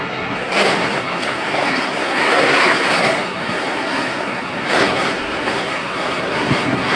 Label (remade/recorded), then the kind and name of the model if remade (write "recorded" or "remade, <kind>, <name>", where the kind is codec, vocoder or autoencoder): remade, codec, SNAC